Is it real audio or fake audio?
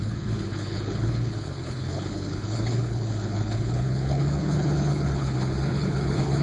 fake